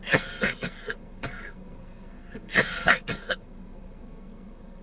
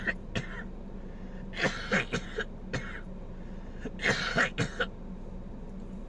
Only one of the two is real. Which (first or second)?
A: second